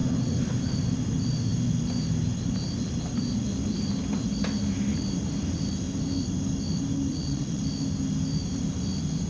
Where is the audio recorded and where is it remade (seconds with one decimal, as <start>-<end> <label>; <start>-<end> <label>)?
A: 0.0-7.1 recorded; 7.1-7.6 remade; 7.6-9.3 recorded